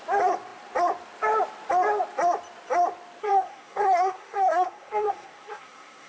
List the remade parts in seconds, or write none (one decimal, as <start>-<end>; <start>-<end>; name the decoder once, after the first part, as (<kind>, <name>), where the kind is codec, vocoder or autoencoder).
3.2-6.1 (codec, SNAC)